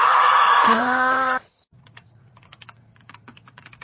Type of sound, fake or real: fake